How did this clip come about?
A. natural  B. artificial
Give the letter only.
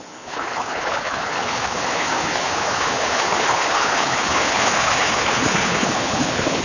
B